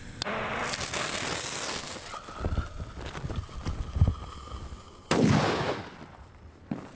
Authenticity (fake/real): real